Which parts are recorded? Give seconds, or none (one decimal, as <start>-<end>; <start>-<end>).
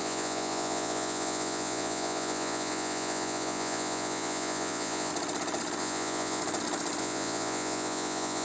5.1-5.8; 6.4-7.0